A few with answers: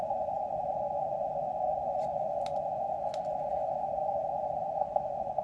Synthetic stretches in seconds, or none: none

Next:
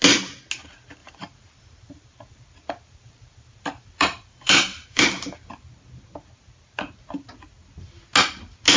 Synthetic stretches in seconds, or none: 1.0-5.0 (vocoder, BigVGAN v2)

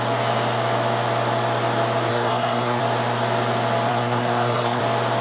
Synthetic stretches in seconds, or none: 2.1-2.8 (codec, SNAC); 3.9-4.8